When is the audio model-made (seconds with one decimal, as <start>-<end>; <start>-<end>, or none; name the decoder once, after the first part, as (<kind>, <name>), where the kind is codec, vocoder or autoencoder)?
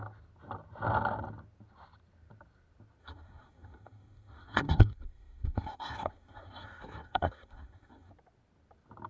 3.0-8.1 (codec, SNAC)